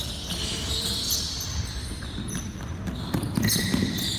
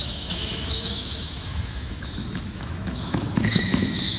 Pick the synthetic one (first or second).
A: second